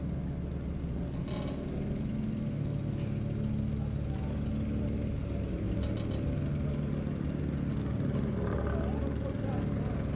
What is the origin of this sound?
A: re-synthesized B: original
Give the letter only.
B